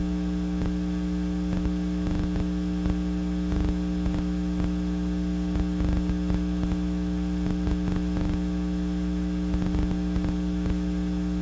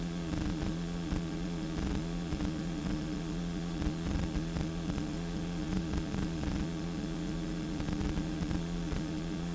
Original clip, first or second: first